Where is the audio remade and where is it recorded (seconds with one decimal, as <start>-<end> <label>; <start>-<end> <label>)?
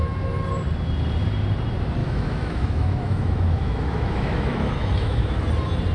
0.0-2.0 recorded; 2.0-5.5 remade; 5.5-5.9 recorded